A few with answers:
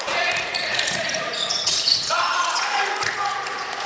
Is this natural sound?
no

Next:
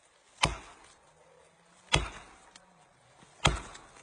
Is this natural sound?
yes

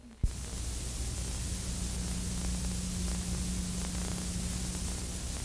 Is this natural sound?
yes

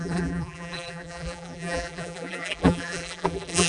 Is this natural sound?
no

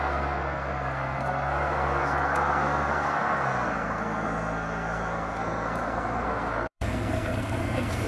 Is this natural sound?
no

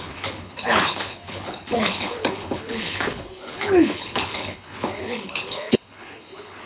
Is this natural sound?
no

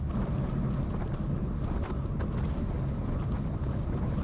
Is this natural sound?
yes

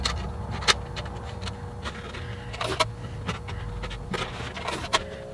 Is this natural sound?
yes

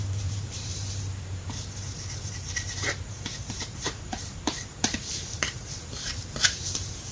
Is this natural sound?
no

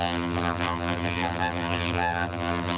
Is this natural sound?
no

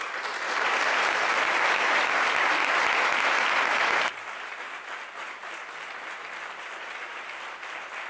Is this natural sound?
yes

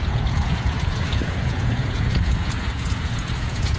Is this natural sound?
no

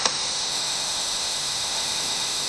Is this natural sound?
no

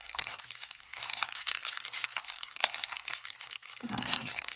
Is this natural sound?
no